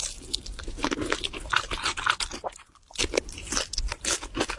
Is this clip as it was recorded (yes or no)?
no